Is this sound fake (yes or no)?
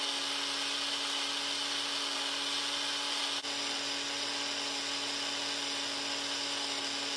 no